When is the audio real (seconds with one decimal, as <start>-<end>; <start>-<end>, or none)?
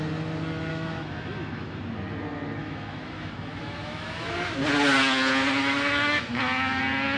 0.0-0.7; 1.8-2.6; 4.3-5.6; 6.8-7.2